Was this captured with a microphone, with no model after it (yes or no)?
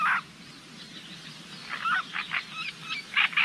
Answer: yes